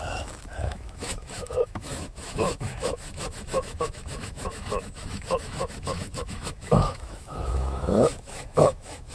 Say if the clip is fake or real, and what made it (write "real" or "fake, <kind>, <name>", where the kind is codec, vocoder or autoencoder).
fake, autoencoder, DAC-VAE